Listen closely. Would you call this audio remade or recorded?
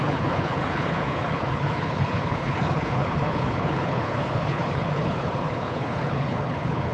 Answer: remade